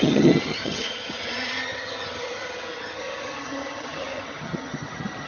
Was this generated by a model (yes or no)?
yes